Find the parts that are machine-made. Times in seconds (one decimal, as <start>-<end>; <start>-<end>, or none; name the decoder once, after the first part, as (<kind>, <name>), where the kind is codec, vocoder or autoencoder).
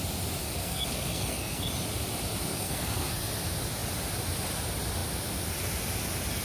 0.4-1.7 (codec, SNAC); 2.5-3.3